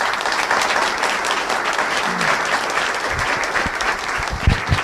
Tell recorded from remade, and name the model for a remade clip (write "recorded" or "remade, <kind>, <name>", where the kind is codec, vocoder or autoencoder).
recorded